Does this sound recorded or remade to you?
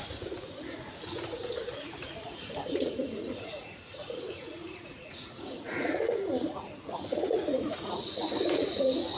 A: remade